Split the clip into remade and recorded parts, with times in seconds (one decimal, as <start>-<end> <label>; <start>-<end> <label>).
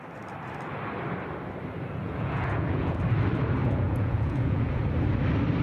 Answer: 0.0-2.0 recorded; 2.0-3.0 remade; 3.0-3.6 recorded; 3.6-4.8 remade; 4.8-5.6 recorded